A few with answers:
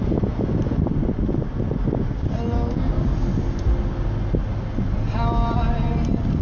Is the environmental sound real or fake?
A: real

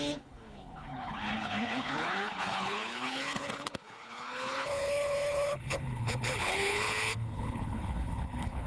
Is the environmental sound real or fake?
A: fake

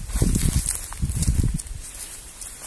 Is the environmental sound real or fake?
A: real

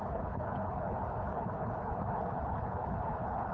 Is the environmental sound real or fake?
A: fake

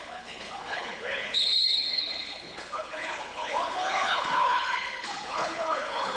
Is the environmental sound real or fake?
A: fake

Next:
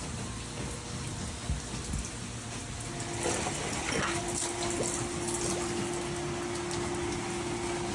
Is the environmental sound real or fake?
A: real